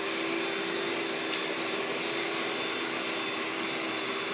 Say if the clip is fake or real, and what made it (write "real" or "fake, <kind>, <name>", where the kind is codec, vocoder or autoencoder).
real